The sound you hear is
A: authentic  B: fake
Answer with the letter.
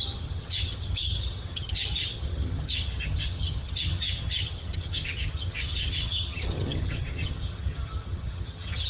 B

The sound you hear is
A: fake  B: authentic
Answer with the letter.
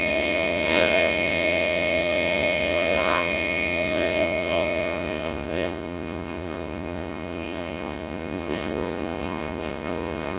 A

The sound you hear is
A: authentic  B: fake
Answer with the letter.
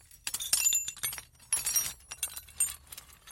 A